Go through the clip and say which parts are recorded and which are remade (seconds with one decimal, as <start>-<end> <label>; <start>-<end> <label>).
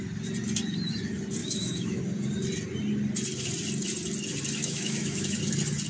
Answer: 0.0-1.4 recorded; 1.4-2.0 remade; 2.0-4.6 recorded; 4.6-5.4 remade; 5.4-5.9 recorded